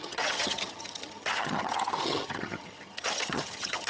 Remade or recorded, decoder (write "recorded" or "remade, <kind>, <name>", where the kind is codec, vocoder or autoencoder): remade, vocoder, HiFi-GAN